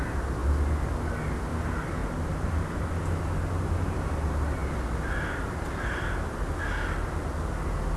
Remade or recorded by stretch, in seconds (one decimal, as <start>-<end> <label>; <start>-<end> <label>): 0.0-2.0 recorded; 2.0-3.0 remade; 3.0-8.0 recorded